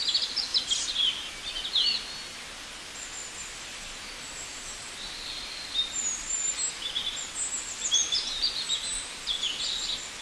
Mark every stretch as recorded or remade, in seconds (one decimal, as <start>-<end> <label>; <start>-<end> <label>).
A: 0.0-8.0 recorded; 8.0-9.3 remade; 9.3-10.2 recorded